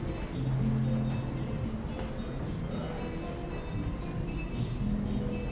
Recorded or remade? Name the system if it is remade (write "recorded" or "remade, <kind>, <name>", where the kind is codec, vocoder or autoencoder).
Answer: recorded